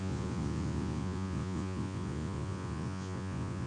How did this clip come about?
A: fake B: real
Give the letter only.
A